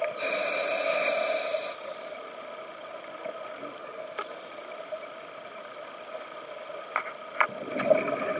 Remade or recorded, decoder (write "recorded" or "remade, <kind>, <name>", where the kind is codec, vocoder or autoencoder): recorded